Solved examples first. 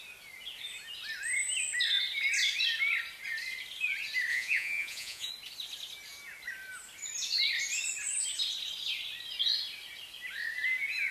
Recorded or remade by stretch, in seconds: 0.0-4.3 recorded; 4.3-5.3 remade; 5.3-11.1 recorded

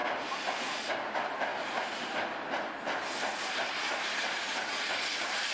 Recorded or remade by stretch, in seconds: 0.0-1.1 recorded; 1.1-1.5 remade; 1.5-3.8 recorded; 3.8-5.5 remade

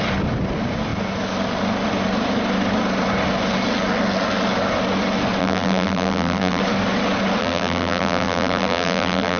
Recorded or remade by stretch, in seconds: 0.0-5.4 recorded; 5.4-6.6 remade; 6.6-7.4 recorded; 7.4-9.4 remade